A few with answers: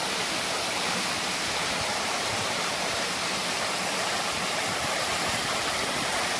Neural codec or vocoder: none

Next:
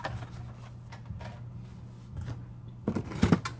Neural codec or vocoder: none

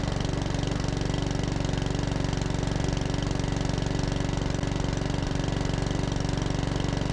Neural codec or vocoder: none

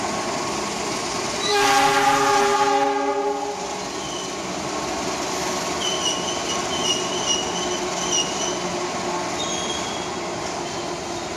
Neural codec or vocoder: none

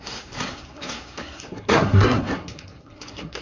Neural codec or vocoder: codec, SNAC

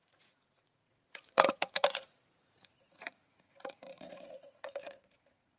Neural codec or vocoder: vocoder, Vocos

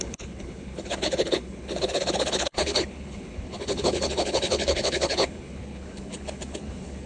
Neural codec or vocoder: codec, HILCodec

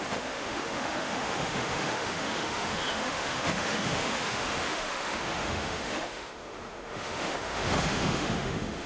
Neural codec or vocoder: autoencoder, DAC-VAE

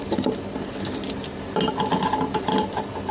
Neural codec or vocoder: none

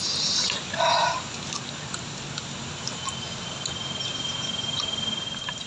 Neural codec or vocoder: none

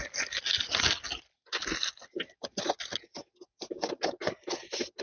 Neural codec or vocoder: none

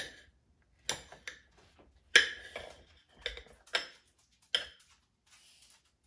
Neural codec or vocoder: none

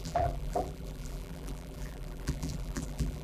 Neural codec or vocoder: vocoder, BigVGAN v2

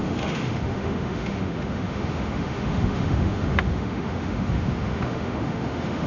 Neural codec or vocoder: autoencoder, DAC-VAE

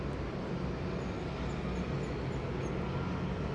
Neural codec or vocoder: none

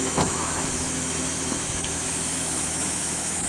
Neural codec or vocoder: autoencoder, DAC-VAE